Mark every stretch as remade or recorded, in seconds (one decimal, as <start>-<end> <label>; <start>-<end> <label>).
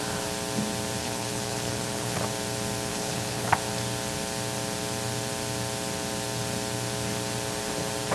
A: 0.0-1.0 recorded; 1.0-2.2 remade; 2.2-2.9 recorded; 2.9-3.5 remade; 3.5-8.1 recorded